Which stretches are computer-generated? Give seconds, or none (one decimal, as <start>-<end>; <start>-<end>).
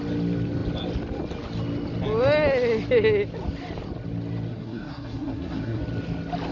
4.5-5.8